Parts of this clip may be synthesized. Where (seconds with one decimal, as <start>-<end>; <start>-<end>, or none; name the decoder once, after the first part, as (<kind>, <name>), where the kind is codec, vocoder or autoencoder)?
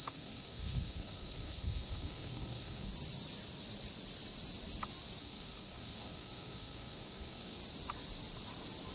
0.0-2.9 (codec, SNAC); 5.2-7.6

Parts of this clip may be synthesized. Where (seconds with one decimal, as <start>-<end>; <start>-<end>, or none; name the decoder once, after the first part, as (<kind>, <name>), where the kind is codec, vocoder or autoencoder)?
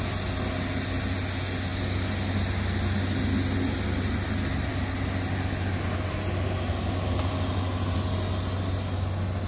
none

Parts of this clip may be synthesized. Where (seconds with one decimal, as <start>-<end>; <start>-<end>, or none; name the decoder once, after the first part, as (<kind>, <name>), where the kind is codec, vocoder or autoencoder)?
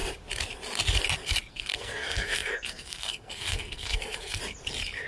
1.5-4.4 (codec, SNAC)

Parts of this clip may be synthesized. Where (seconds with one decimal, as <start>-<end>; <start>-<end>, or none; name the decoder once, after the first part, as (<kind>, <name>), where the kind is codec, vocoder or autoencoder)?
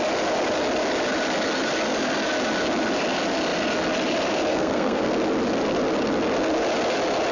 4.5-5.1 (codec, SNAC)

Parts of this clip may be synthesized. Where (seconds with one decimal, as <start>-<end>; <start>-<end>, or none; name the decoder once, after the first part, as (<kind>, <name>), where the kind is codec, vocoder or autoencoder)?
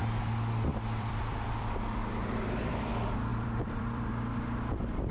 0.7-2.9 (vocoder, BigVGAN v2); 3.3-4.1